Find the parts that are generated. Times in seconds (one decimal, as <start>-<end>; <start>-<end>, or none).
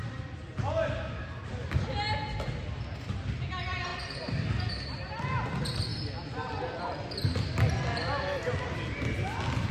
none